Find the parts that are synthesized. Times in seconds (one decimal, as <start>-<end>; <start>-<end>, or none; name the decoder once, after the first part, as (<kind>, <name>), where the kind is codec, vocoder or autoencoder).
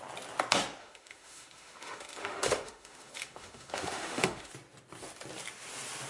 0.8-4.5 (autoencoder, DAC-VAE)